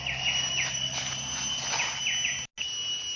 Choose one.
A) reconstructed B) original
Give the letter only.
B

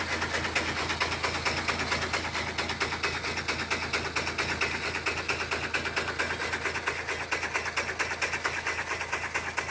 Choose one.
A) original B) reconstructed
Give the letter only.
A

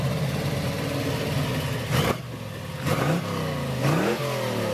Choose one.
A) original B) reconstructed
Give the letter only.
A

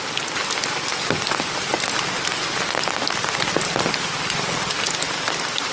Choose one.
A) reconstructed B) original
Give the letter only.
B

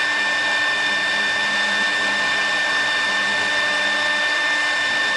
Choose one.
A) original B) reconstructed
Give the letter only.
A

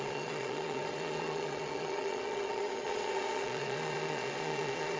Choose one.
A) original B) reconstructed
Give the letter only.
B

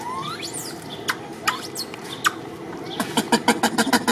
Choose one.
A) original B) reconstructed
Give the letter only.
A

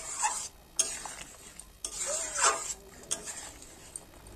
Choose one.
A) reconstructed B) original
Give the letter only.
B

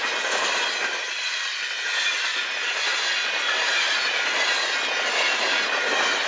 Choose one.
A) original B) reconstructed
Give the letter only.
A